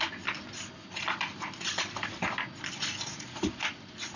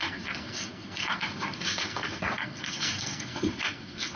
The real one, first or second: first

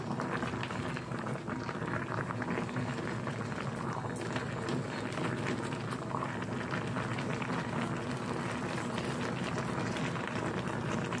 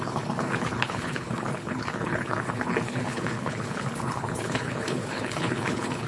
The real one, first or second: first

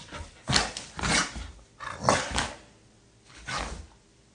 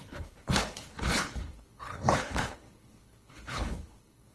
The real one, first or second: first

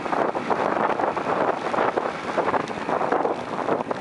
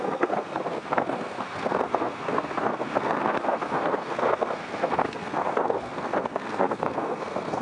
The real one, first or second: first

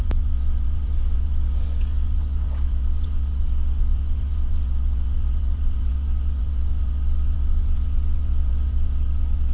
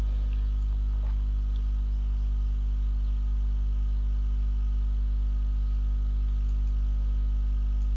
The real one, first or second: second